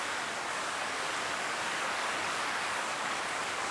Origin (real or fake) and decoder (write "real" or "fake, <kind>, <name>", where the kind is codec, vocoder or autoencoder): fake, codec, DAC